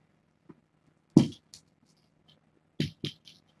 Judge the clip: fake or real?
real